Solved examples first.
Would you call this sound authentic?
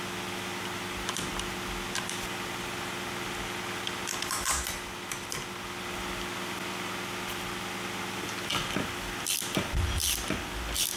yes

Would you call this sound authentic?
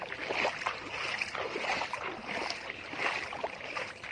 yes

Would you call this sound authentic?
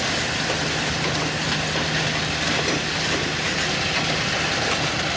yes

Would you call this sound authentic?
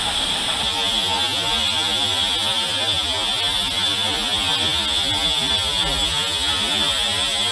yes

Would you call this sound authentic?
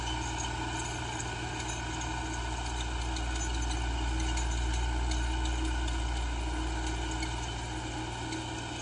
yes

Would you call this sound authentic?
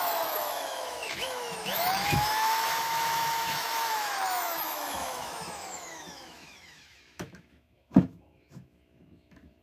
no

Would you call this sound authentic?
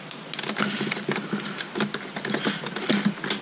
yes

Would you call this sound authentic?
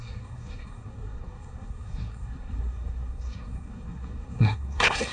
no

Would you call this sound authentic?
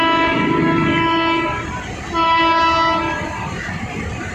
yes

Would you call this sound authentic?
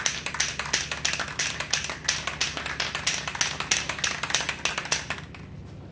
yes